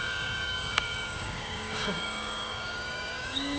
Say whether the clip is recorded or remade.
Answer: remade